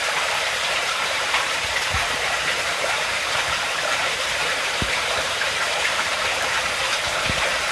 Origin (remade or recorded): remade